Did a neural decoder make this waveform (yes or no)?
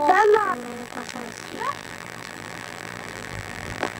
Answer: yes